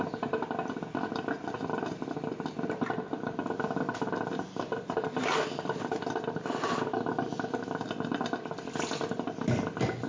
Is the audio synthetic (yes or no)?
no